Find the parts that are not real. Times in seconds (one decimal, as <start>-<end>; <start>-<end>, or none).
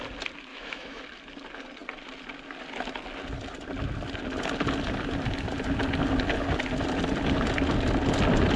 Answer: 0.5-1.0